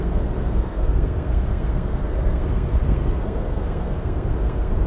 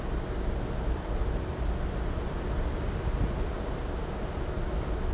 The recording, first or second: second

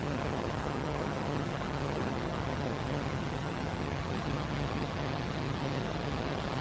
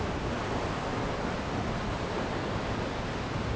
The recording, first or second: second